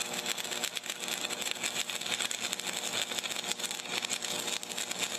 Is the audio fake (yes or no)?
no